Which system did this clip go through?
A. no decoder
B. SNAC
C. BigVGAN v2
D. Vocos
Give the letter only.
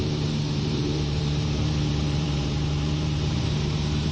C